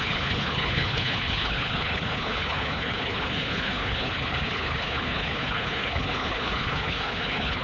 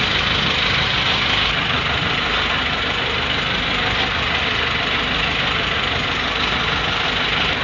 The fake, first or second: first